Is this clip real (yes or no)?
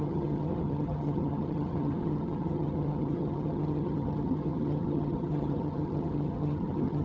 no